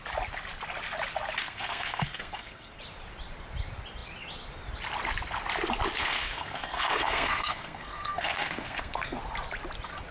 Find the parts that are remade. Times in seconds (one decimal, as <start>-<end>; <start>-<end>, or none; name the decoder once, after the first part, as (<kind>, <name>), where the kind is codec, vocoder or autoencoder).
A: 1.4-2.8 (codec, SNAC); 6.0-9.2